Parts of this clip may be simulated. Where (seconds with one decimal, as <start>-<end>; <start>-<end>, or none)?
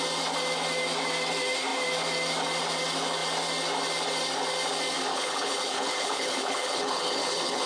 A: 5.1-7.7